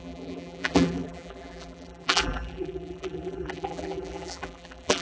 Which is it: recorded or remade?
remade